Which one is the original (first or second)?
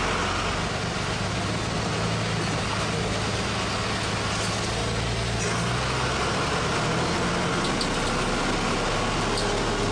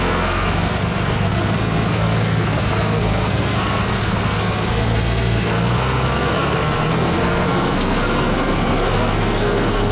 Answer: first